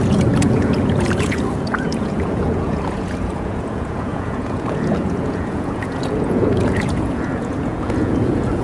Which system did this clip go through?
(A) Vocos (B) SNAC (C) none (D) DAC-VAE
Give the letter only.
A